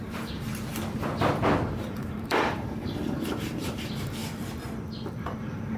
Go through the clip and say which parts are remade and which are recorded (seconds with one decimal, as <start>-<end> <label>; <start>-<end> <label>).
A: 0.0-0.5 remade; 0.5-1.7 recorded; 1.7-4.2 remade; 4.2-5.1 recorded; 5.1-5.8 remade